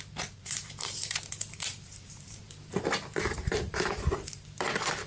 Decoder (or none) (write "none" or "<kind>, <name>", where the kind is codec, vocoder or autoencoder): vocoder, BigVGAN v2